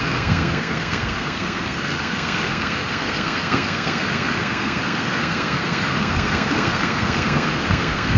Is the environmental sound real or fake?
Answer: fake